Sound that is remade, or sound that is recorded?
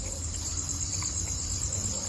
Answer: recorded